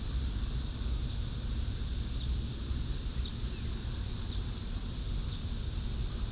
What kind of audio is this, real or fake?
real